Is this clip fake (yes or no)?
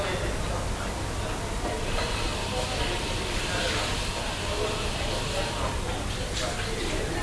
no